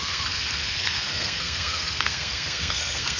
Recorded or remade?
remade